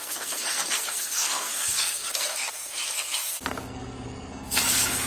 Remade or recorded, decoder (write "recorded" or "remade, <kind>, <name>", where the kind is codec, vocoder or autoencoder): remade, codec, SNAC